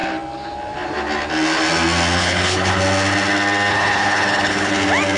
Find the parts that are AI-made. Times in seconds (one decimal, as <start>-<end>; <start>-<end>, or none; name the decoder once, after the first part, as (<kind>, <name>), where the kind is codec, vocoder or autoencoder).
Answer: 2.2-2.8 (codec, HILCodec); 3.7-4.7